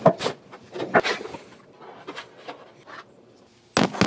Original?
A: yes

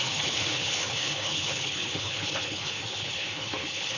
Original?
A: no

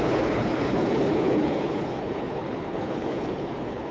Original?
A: no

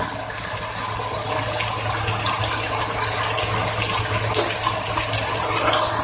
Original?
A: yes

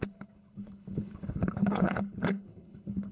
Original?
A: no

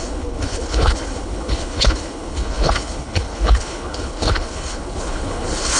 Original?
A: no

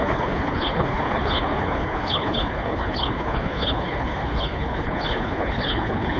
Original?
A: no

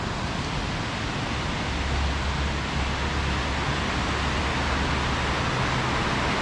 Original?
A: yes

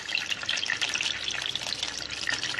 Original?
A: yes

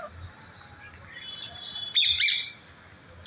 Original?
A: yes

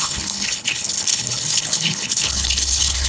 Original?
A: no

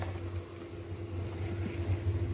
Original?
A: yes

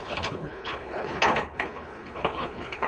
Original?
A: no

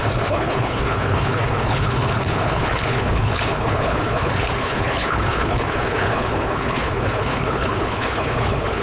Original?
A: no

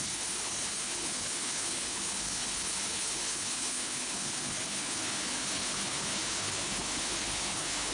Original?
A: no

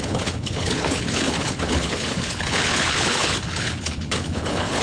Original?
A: no